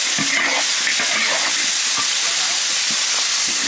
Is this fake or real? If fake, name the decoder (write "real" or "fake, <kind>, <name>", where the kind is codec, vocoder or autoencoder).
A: real